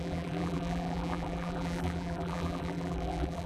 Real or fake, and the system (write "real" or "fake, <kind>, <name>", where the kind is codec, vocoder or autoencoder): fake, vocoder, BigVGAN v2